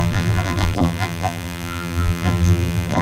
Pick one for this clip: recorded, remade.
remade